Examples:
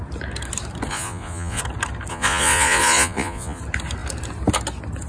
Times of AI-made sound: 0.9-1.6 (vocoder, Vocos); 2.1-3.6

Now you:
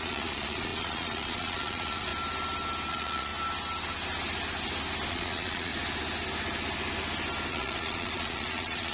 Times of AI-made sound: 0.0-2.1 (vocoder, Vocos); 2.9-3.3; 5.1-5.7; 7.5-8.9

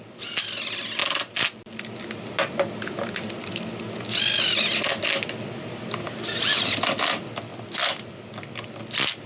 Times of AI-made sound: none